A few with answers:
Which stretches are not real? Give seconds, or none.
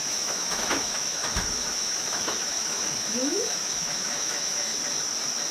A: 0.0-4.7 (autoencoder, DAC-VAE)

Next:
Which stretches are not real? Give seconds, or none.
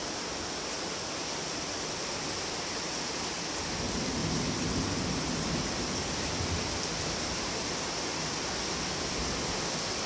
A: none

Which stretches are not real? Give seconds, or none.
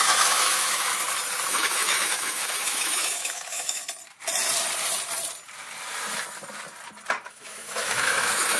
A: 0.0-0.9 (autoencoder, DAC-VAE); 1.5-3.8; 7.3-8.6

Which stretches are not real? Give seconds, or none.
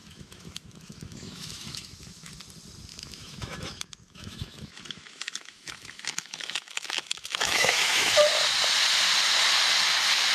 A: 0.0-2.3 (autoencoder, DAC-VAE); 2.9-8.1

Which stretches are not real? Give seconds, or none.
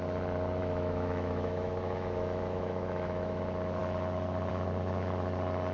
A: 0.6-3.4 (autoencoder, DAC-VAE)